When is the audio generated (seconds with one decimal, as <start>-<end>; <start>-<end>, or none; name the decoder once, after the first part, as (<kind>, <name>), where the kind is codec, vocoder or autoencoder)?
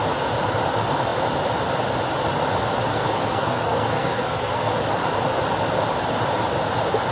2.9-4.7 (codec, SNAC)